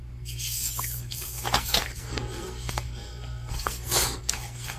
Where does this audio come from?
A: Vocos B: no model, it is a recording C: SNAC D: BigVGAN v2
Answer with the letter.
C